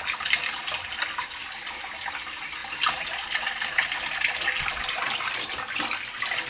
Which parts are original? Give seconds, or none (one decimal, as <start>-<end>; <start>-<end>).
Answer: 0.0-1.4; 1.9-2.6; 6.1-6.5